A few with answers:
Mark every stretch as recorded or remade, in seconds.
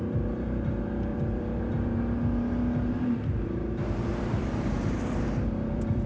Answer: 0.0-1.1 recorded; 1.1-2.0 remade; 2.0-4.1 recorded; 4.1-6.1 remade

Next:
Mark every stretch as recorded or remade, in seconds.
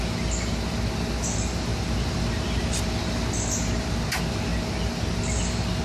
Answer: 0.0-5.8 recorded